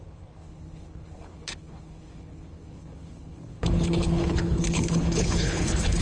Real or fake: fake